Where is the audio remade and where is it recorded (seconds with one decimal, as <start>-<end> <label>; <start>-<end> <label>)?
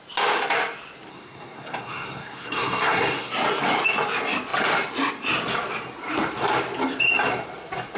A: 0.0-1.1 recorded; 1.1-3.3 remade; 3.3-8.0 recorded